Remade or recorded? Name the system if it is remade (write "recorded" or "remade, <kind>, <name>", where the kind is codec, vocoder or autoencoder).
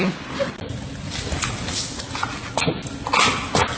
recorded